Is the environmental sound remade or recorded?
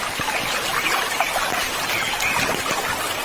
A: recorded